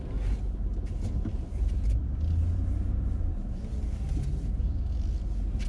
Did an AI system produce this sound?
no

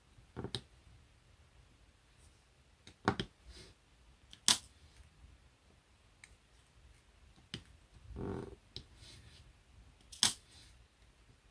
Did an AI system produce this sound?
no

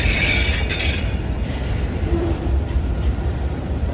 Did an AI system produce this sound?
yes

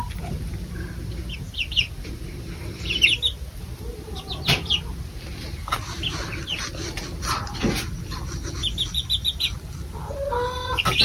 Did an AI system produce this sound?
no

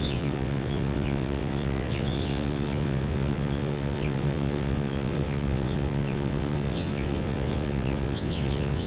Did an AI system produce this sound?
yes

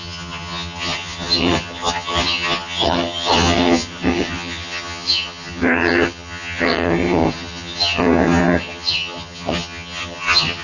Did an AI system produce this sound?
yes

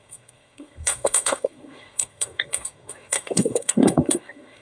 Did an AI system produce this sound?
yes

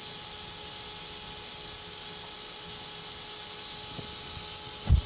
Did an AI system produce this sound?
no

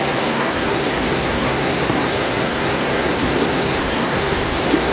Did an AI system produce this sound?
yes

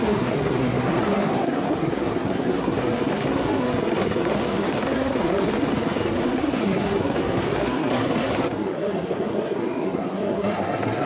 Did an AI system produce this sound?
yes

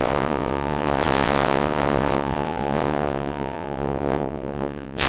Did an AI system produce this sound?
yes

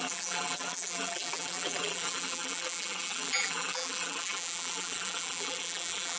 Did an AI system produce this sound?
yes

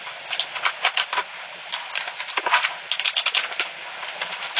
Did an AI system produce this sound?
no